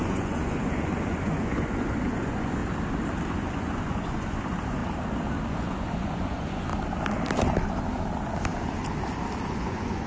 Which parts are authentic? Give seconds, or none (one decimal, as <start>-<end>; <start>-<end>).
2.6-3.3; 4.8-5.5; 6.7-9.4